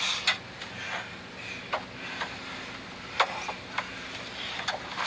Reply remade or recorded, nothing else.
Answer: recorded